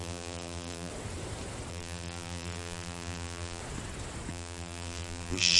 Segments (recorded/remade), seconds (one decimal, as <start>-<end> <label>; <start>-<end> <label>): 0.0-0.9 remade; 0.9-1.7 recorded; 1.7-3.6 remade; 3.6-4.3 recorded; 4.3-5.6 remade